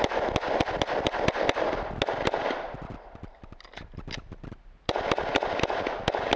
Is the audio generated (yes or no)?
no